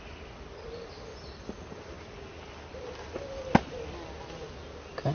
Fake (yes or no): no